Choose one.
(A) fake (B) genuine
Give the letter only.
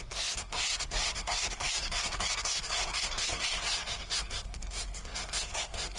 A